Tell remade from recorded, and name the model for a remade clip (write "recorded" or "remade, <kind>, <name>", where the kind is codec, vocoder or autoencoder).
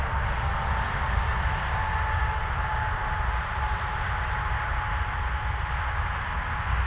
recorded